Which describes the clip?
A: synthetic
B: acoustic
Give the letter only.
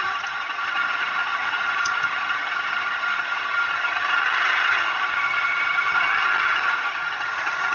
A